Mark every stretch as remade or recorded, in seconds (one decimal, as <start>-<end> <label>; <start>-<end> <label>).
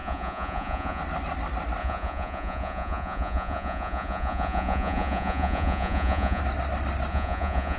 0.0-1.0 remade; 1.0-1.8 recorded; 1.8-6.4 remade; 6.4-7.1 recorded; 7.1-7.8 remade